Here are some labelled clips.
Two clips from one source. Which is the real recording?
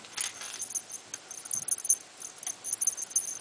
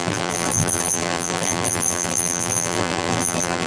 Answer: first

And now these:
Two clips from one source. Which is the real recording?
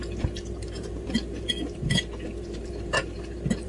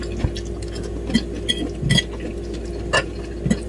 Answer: second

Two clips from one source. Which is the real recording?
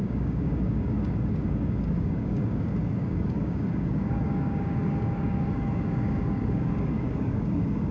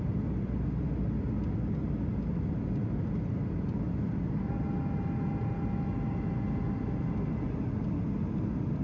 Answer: second